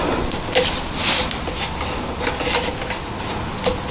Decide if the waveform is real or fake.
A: real